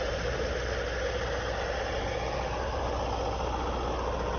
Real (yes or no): yes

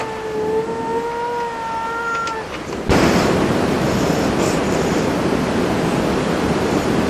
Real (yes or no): yes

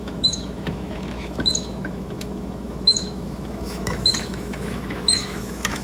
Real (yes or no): no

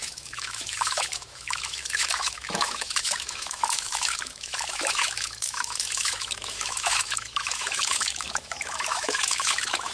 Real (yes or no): no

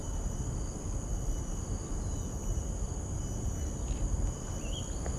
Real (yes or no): yes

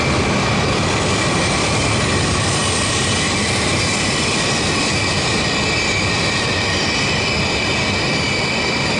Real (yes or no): yes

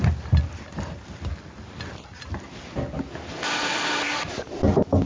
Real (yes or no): yes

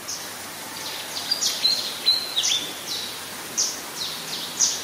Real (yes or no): yes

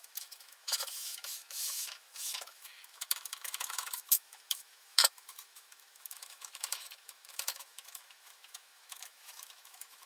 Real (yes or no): no